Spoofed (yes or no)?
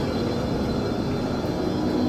no